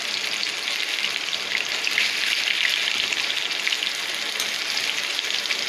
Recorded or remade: recorded